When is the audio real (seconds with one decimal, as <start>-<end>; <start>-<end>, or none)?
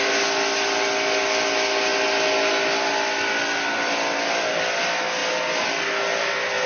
0.0-6.7